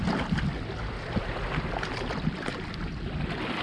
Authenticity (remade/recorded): recorded